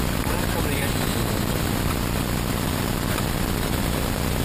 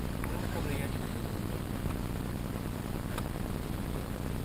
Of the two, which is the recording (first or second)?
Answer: second